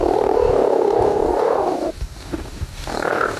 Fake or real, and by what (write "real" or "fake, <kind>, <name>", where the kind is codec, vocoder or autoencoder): fake, codec, DAC